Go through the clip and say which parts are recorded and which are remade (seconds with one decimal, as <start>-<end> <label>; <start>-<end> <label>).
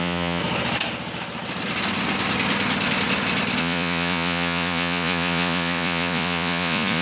0.0-0.4 remade; 0.4-3.6 recorded; 3.6-7.0 remade